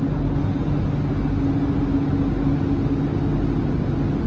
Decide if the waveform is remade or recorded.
recorded